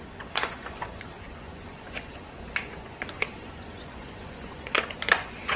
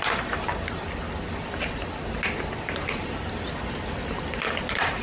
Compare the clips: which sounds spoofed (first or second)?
first